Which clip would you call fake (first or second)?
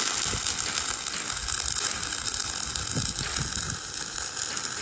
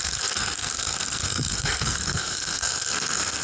second